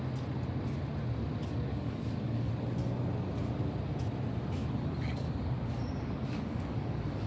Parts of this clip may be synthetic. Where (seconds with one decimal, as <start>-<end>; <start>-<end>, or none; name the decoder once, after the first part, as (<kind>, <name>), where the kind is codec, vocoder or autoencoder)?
1.7-2.5 (codec, DAC); 4.6-7.3